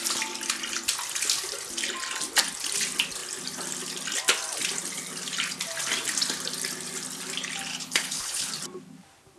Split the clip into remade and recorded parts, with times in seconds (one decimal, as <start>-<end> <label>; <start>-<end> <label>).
0.0-7.7 recorded; 7.7-8.5 remade; 8.5-9.4 recorded